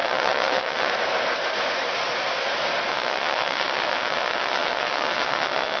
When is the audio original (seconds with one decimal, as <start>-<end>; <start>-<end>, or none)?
0.9-2.9